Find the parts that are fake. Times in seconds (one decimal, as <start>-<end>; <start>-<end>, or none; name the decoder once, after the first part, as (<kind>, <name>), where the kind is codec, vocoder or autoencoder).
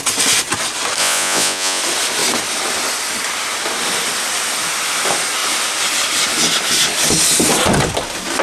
1.0-1.8 (vocoder, Vocos)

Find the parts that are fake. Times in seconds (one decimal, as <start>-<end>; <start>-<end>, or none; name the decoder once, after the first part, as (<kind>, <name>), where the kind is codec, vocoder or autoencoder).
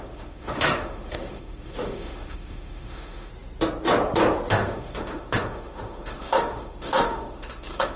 0.0-3.3 (autoencoder, DAC-VAE); 4.5-8.0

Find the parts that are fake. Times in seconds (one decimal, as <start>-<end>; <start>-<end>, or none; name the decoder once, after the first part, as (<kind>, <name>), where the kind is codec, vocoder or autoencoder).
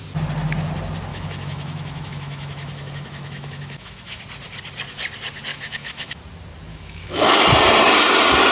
1.1-4.2 (autoencoder, DAC-VAE); 5.5-6.2; 6.7-7.4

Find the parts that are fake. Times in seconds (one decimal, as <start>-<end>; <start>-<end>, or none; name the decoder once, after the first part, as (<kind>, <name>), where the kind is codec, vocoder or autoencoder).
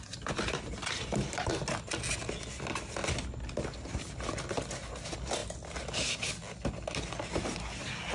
0.8-1.5 (vocoder, BigVGAN v2)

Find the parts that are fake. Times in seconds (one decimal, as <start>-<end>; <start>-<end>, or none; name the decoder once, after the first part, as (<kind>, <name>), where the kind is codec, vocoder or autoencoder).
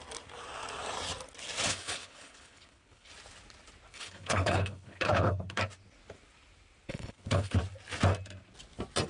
1.7-3.1 (codec, HILCodec); 3.9-5.6; 6.9-7.6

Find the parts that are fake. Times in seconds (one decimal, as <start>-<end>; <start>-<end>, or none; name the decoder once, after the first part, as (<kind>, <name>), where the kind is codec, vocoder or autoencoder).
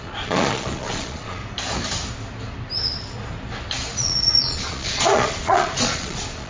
0.0-1.4 (vocoder, Vocos); 4.0-6.5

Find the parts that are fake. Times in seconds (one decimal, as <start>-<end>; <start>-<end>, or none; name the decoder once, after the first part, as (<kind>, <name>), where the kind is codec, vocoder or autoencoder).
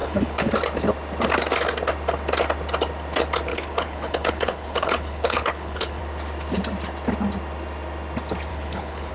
0.0-0.5 (codec, HILCodec); 3.5-6.0; 8.5-9.1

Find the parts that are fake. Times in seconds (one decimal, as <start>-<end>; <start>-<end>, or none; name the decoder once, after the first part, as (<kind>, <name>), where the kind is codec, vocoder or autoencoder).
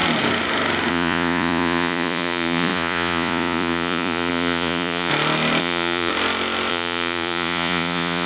0.9-5.1 (vocoder, Vocos); 5.6-6.1; 6.7-8.3